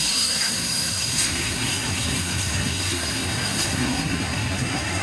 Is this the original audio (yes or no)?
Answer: no